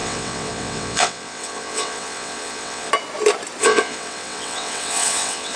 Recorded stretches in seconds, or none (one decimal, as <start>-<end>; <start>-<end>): 2.9-3.6